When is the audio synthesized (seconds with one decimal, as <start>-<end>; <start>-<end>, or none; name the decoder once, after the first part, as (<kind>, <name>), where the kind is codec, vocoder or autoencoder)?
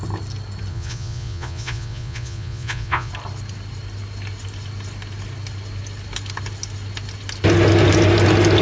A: 0.7-3.1 (vocoder, Vocos)